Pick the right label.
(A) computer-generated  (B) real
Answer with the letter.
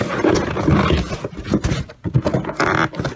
B